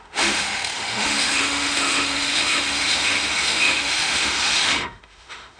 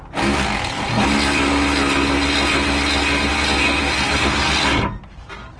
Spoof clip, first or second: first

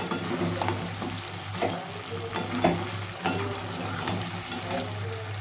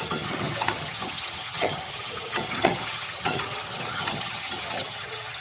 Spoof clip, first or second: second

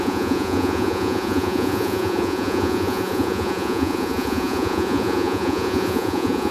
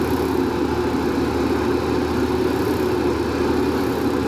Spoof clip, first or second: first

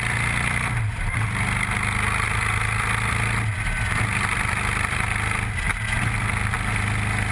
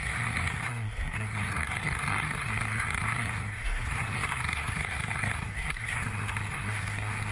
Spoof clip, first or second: second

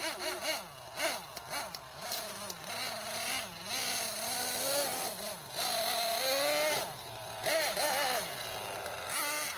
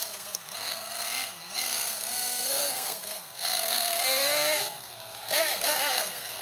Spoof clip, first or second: second